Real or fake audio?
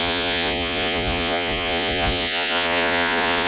fake